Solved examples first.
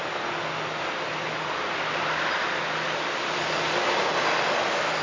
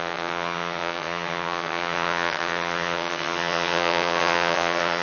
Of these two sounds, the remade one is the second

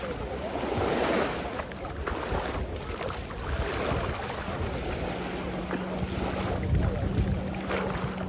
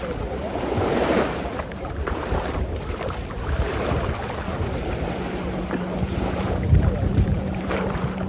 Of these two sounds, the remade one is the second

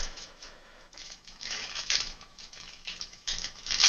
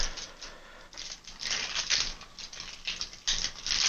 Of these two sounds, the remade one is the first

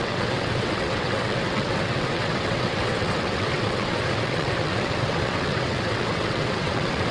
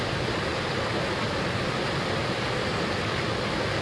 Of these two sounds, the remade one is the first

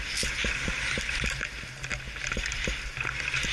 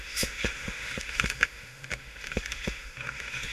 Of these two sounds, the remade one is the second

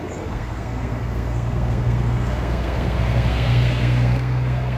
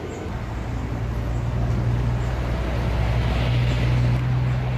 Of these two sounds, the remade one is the first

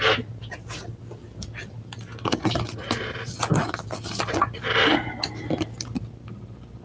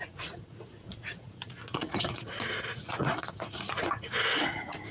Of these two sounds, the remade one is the second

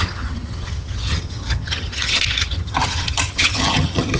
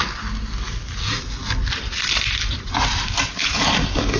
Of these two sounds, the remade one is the first